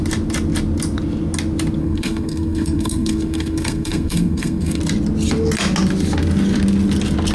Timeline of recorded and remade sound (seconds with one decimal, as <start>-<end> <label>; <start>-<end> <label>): 0.0-1.8 recorded; 1.8-4.8 remade; 4.8-7.3 recorded